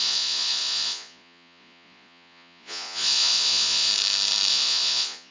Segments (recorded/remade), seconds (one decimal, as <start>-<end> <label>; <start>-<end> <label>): 0.0-3.9 remade; 3.9-4.5 recorded; 4.5-5.3 remade